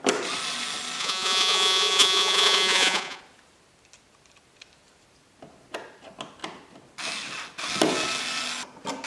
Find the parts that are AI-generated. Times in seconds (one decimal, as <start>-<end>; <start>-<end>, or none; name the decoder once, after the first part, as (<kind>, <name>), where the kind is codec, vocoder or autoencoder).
1.0-3.2 (vocoder, Vocos)